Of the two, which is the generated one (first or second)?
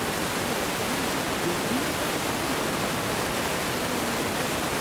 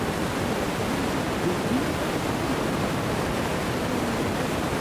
second